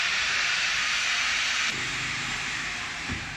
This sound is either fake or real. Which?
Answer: fake